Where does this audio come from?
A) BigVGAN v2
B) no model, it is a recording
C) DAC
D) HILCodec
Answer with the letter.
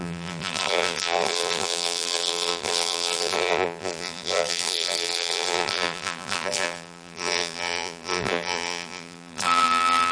A